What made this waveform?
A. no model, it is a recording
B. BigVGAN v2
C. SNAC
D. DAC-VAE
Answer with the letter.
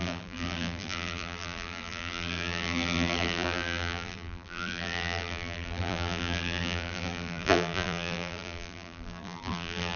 B